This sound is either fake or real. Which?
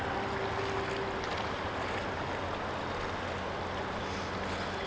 real